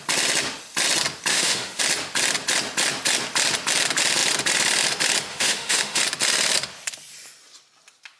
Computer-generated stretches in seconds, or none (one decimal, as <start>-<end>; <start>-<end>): 1.3-1.8; 5.3-6.0